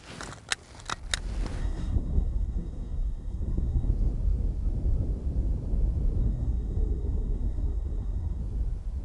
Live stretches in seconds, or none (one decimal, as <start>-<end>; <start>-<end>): 0.0-1.6; 3.9-6.2; 8.4-9.0